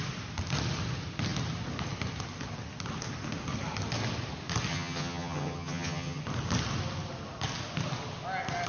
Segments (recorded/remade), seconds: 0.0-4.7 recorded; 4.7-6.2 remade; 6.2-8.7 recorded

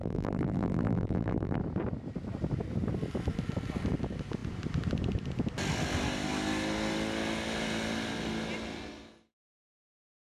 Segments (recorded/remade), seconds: 0.0-1.6 remade; 1.6-10.3 recorded

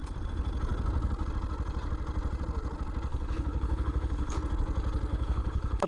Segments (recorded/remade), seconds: 0.0-3.1 recorded; 3.1-4.4 remade; 4.4-5.1 recorded; 5.1-5.9 remade